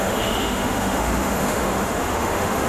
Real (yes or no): no